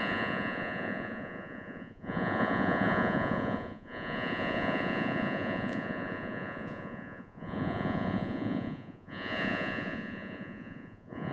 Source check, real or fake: fake